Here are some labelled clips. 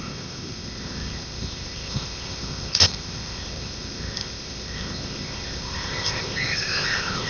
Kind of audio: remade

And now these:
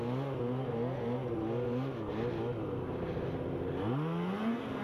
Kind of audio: recorded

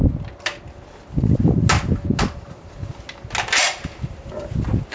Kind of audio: recorded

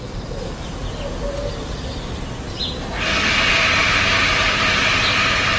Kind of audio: recorded